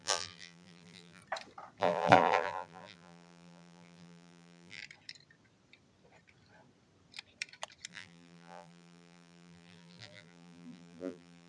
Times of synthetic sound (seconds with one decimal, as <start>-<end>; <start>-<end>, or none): 0.0-1.2; 1.8-4.8; 7.9-11.5